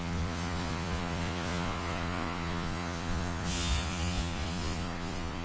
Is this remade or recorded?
remade